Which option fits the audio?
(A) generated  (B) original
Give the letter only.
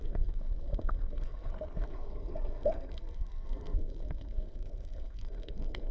A